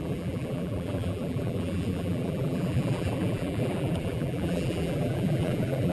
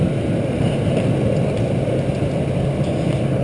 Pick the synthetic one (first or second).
first